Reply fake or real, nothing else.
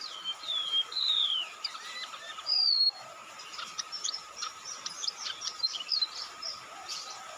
fake